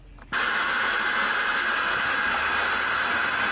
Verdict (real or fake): real